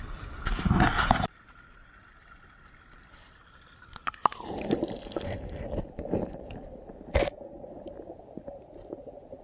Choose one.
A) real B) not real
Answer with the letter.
A